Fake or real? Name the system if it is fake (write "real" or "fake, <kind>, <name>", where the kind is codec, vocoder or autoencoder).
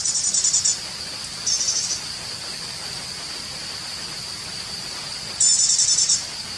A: real